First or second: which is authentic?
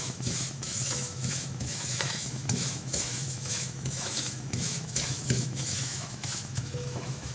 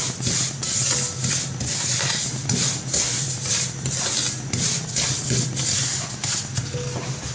second